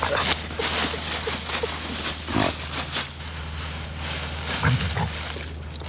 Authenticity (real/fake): real